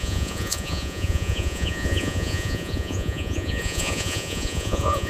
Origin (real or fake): fake